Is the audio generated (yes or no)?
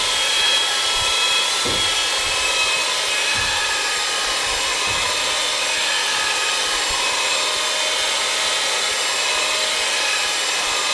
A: no